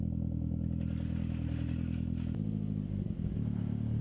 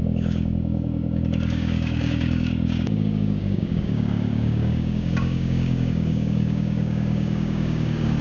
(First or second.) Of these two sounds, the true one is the first